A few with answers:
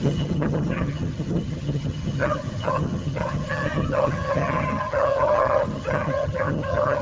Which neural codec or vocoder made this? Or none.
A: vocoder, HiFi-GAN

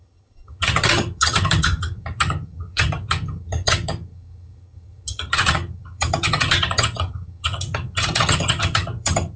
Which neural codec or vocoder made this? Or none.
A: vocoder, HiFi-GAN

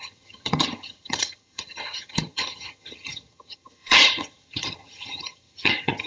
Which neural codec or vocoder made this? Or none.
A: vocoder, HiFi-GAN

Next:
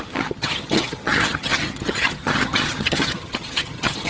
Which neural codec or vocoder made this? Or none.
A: vocoder, HiFi-GAN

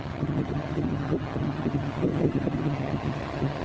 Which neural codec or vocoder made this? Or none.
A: vocoder, HiFi-GAN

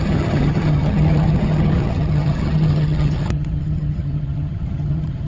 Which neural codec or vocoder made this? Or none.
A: vocoder, HiFi-GAN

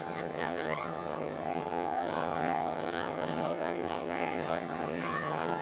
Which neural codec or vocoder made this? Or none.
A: vocoder, HiFi-GAN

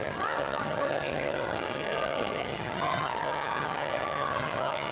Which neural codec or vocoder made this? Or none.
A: vocoder, HiFi-GAN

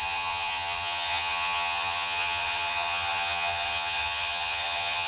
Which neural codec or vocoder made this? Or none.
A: vocoder, HiFi-GAN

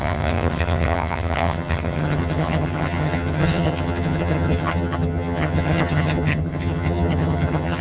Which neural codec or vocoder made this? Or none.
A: vocoder, HiFi-GAN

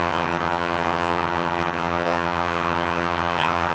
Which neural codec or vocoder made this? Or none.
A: vocoder, HiFi-GAN